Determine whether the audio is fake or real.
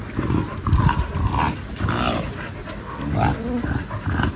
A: real